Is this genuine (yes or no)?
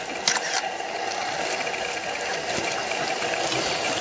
yes